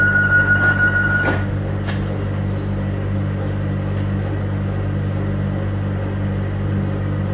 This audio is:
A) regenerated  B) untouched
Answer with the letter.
B